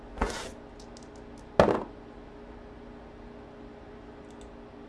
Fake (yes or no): no